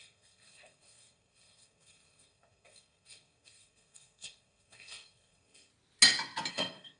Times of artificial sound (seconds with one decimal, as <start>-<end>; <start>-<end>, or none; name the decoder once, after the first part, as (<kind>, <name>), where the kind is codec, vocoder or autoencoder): 0.0-5.7 (codec, SNAC); 6.5-7.0